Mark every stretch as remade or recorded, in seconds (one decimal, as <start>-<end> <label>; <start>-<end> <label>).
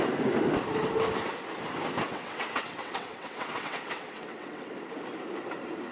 0.0-2.1 recorded; 2.1-4.7 remade; 4.7-5.9 recorded